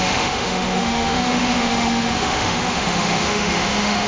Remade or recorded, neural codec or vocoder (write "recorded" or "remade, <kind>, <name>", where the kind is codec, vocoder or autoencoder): remade, autoencoder, DAC-VAE